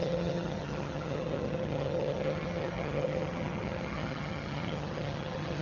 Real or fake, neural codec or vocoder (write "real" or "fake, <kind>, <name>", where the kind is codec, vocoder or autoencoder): fake, vocoder, HiFi-GAN